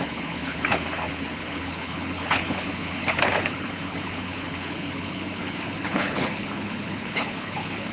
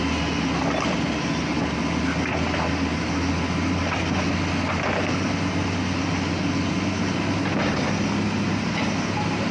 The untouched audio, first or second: second